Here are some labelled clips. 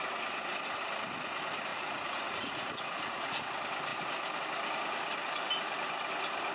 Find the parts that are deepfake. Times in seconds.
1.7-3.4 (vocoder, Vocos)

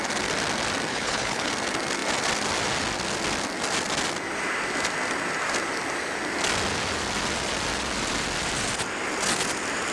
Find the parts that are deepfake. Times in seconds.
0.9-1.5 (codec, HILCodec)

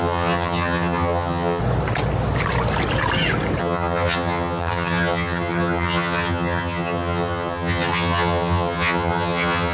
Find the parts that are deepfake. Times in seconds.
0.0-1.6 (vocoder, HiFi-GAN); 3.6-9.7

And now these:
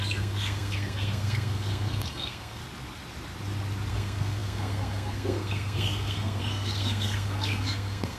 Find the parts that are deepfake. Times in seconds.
0.0-2.6 (codec, SNAC); 3.9-8.2

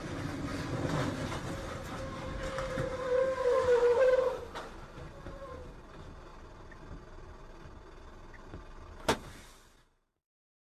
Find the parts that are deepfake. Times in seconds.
none